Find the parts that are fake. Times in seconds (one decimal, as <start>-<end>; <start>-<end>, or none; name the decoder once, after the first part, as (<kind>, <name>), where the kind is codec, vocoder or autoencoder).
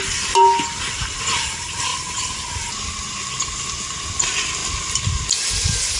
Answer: none